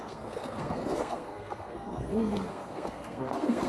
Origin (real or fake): fake